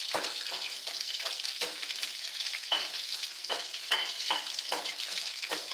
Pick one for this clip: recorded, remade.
remade